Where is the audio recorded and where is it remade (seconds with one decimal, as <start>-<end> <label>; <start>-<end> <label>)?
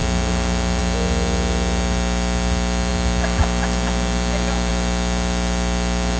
0.0-6.2 recorded